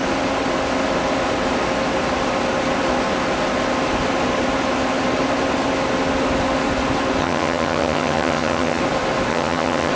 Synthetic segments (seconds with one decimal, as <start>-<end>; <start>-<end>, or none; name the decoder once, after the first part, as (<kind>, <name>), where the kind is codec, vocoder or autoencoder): 7.2-8.8 (vocoder, HiFi-GAN); 9.3-9.9